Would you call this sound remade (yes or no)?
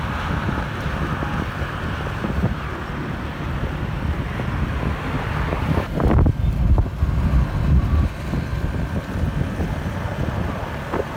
no